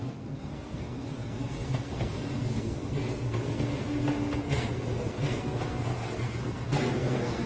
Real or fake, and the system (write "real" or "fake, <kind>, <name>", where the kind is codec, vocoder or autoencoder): fake, codec, SNAC